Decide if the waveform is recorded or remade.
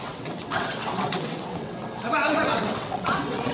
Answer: remade